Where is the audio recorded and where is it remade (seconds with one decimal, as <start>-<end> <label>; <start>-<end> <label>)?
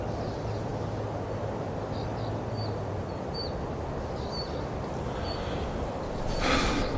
0.0-7.0 recorded